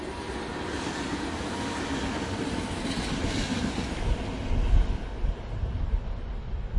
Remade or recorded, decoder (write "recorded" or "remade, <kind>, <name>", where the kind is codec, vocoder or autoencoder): recorded